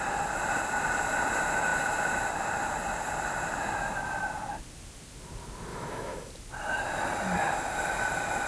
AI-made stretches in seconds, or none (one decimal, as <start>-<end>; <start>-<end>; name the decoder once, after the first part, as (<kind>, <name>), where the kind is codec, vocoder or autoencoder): 5.7-6.3 (autoencoder, DAC-VAE)